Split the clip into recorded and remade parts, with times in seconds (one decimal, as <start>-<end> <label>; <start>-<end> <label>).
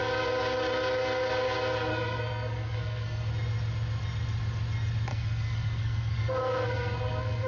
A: 0.0-1.9 recorded; 1.9-3.3 remade; 3.3-5.1 recorded; 5.1-7.5 remade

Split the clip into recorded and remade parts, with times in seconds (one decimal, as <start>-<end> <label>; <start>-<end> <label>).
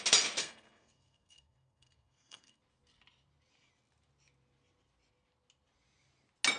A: 0.0-0.4 recorded; 0.4-2.6 remade; 2.6-6.6 recorded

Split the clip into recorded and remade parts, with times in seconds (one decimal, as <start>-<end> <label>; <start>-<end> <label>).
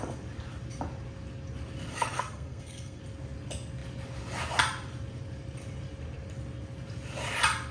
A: 0.0-1.9 recorded; 1.9-3.0 remade; 3.0-7.7 recorded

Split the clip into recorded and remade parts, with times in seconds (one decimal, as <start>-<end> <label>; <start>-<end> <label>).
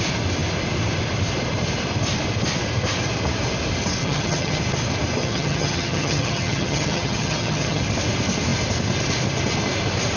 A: 0.0-4.0 recorded; 4.0-4.6 remade; 4.6-5.2 recorded; 5.2-7.8 remade; 7.8-10.2 recorded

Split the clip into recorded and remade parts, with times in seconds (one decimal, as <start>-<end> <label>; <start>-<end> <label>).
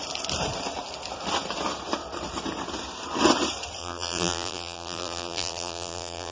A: 0.0-3.8 recorded; 3.8-6.3 remade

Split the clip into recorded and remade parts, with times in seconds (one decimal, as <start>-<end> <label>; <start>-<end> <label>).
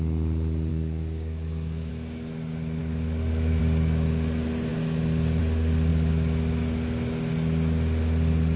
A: 0.0-0.7 recorded; 0.7-1.9 remade; 1.9-2.8 recorded; 2.8-3.6 remade; 3.6-8.6 recorded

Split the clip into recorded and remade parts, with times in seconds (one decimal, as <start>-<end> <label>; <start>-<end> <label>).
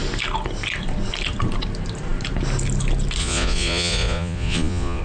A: 0.0-3.2 recorded; 3.2-5.0 remade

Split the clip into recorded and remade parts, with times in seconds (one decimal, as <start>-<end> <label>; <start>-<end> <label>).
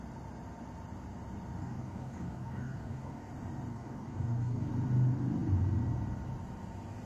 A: 0.0-1.6 recorded; 1.6-3.3 remade; 3.3-3.7 recorded; 3.7-4.7 remade; 4.7-7.1 recorded